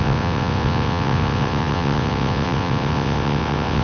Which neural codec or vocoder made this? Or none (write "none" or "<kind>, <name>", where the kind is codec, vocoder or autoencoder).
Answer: vocoder, WaveNeXt